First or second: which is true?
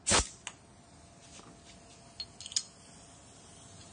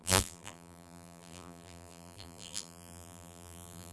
first